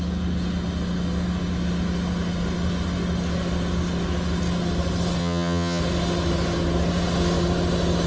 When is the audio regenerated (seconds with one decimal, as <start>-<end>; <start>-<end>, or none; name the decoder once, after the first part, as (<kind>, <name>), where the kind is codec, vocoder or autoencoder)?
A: 5.2-5.8 (vocoder, HiFi-GAN)